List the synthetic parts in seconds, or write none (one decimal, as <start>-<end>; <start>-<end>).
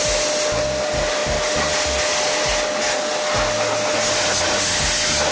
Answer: none